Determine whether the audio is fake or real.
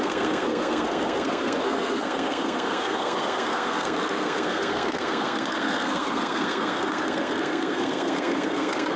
fake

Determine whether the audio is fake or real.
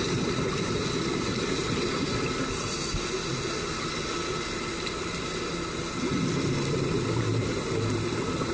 real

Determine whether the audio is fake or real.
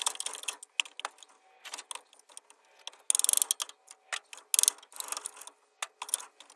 real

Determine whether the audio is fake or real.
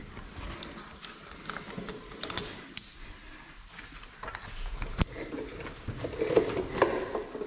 real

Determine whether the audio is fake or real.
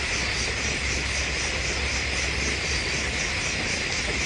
real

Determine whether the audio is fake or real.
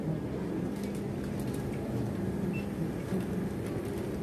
real